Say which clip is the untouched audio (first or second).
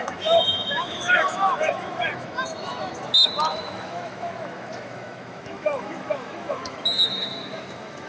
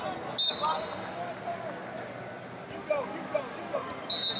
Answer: second